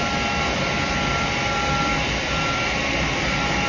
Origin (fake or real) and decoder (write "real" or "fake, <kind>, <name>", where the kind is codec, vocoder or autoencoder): real